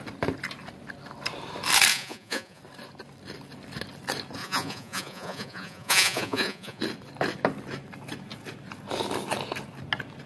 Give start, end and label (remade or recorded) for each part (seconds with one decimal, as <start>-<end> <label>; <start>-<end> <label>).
0.0-1.9 recorded; 1.9-2.6 remade; 2.6-4.4 recorded; 4.4-6.8 remade; 6.8-10.3 recorded